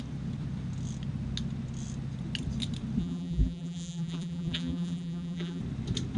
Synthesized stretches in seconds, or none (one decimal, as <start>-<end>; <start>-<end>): 3.0-5.6